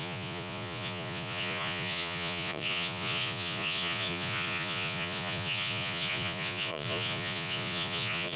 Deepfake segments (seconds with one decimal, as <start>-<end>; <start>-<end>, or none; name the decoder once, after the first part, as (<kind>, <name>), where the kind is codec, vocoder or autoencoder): 0.0-8.4 (vocoder, Vocos)